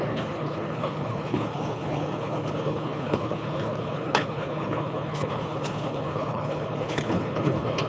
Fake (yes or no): yes